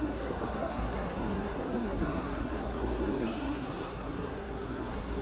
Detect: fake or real fake